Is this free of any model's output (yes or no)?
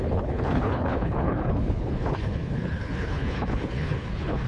no